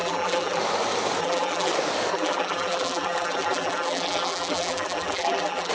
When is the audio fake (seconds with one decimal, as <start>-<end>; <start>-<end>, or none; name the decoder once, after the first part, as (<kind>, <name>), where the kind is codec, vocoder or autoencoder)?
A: 0.0-0.6 (vocoder, BigVGAN v2); 1.2-1.7; 2.1-5.7